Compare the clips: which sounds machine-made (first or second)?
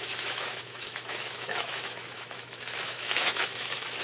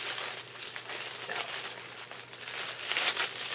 first